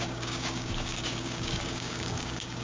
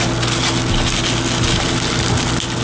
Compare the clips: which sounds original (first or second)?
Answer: second